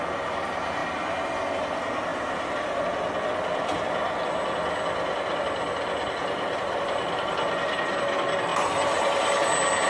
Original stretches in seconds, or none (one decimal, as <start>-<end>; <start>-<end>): 0.0-6.2; 7.3-8.5